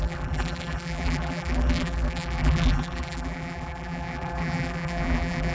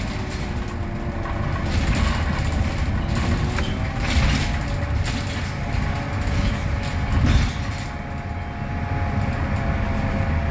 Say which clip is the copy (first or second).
first